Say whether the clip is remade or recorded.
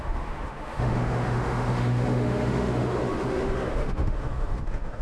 remade